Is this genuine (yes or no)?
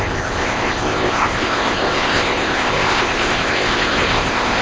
no